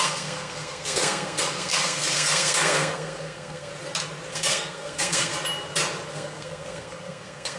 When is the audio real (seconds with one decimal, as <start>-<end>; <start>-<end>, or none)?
3.7-4.3; 5.3-6.1

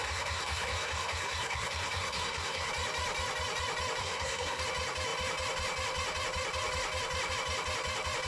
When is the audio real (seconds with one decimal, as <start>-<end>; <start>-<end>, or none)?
2.7-4.0; 4.6-8.3

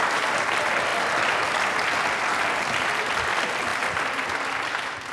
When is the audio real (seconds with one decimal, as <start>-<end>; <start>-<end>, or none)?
0.0-5.1

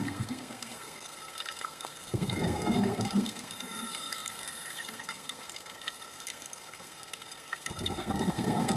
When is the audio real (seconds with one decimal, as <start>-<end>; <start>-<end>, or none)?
none

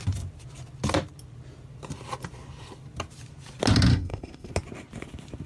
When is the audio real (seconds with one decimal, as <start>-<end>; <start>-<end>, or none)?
0.0-3.9; 4.5-5.5

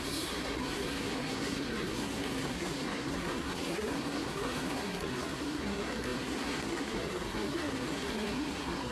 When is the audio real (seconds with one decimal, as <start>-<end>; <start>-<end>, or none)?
none

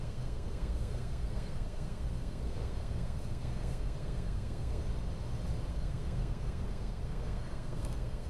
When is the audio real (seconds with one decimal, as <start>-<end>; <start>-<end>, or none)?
4.8-5.7

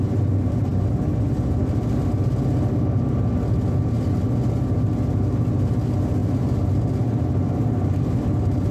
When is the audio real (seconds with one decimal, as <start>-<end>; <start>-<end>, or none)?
0.0-8.7